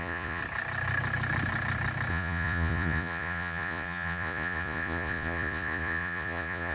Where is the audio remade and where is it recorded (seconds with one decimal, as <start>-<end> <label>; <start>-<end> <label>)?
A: 0.0-0.4 remade; 0.4-2.1 recorded; 2.1-6.7 remade